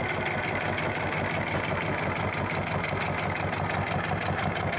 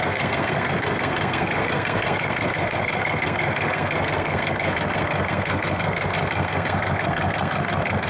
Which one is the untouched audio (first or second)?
first